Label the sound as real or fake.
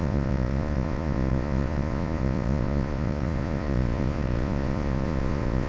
fake